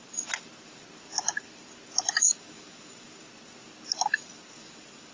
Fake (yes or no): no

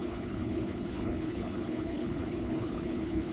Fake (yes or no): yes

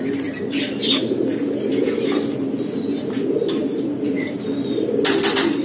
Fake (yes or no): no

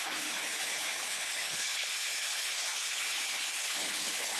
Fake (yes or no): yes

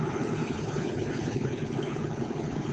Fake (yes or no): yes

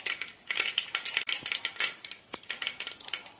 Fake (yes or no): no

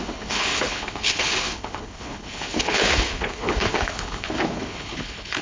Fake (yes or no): yes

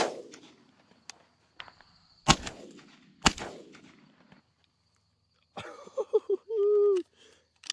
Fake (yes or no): no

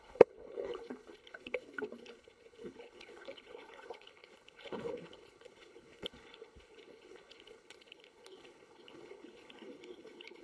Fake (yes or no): yes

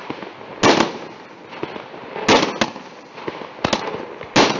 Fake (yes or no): no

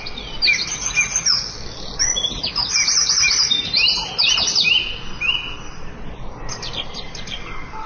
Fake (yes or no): no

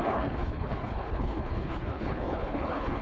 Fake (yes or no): yes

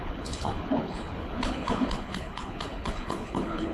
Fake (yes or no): yes